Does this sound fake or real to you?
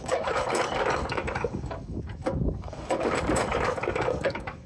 fake